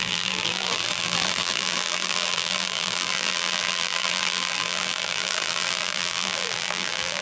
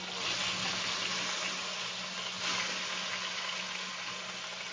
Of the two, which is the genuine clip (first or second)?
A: second